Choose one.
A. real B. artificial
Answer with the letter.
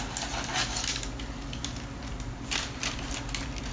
A